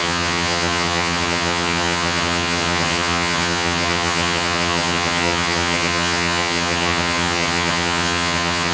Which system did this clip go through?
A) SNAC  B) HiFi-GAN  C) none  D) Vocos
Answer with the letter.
B